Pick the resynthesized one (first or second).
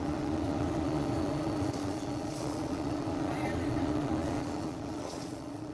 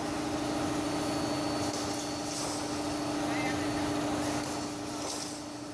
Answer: first